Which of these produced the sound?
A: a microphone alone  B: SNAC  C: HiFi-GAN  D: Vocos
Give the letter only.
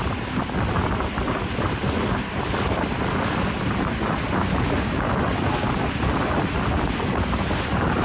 A